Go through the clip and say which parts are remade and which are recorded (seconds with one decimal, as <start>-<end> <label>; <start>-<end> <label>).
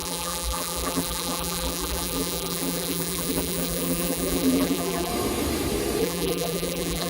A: 0.0-5.1 remade; 5.1-6.0 recorded; 6.0-7.1 remade